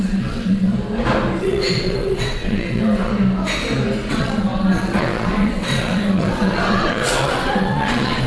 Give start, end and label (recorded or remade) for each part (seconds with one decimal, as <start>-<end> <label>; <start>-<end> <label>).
0.0-0.7 remade; 0.7-1.4 recorded; 1.4-3.1 remade; 3.1-4.1 recorded; 4.1-8.3 remade